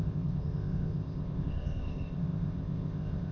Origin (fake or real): fake